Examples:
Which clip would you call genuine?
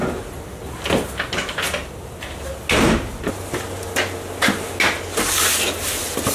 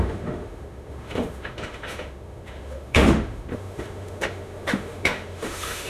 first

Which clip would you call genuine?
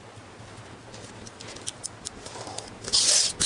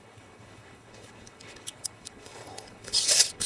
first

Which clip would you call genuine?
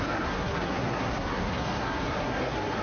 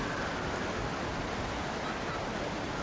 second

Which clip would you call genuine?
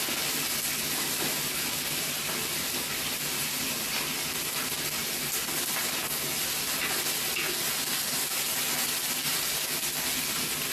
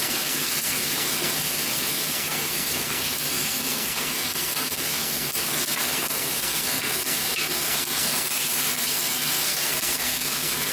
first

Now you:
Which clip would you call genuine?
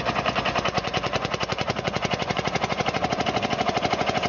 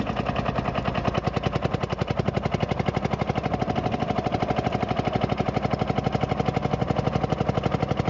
second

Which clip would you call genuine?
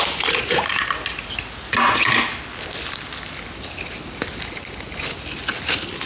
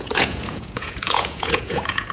first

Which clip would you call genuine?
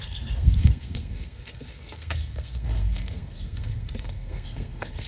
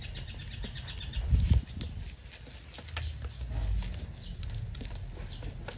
second